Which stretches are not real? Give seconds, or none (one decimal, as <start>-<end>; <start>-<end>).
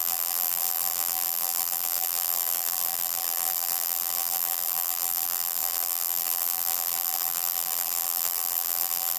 0.0-9.2